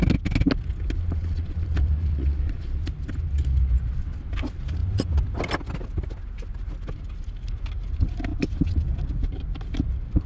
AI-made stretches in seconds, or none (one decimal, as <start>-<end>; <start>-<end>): 1.2-2.8